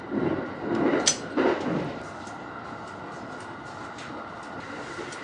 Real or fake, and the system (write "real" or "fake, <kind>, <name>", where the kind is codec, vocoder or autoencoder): real